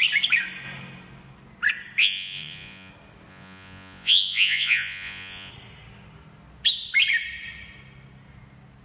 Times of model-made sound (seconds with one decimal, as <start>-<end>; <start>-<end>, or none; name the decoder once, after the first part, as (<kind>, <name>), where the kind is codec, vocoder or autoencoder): 2.0-2.9 (vocoder, Vocos); 3.3-5.5